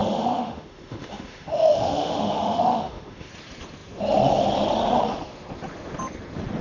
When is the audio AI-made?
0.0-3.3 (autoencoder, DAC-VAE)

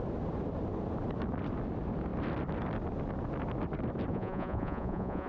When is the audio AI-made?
4.1-5.3 (vocoder, Vocos)

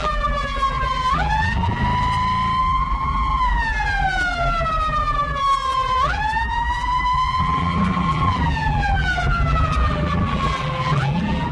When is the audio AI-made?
0.0-1.8 (vocoder, BigVGAN v2); 2.6-11.5

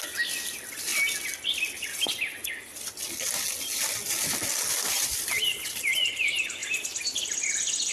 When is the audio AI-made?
0.0-0.9 (vocoder, BigVGAN v2); 1.8-2.4; 4.7-7.9

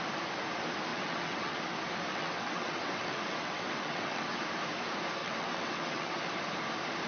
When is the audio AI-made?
0.9-1.6 (vocoder, WaveNeXt); 2.1-4.4; 5.2-6.2

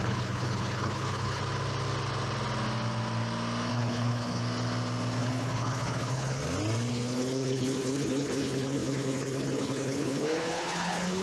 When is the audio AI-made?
0.0-1.4 (codec, HILCodec); 3.7-4.4; 5.2-6.4; 6.9-11.2

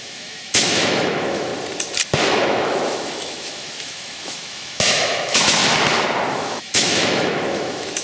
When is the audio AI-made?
0.0-1.5 (autoencoder, DAC-VAE); 2.3-5.6; 6.3-8.0

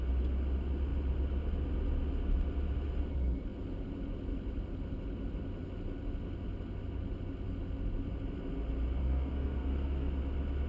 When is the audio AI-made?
9.0-10.1 (codec, SNAC)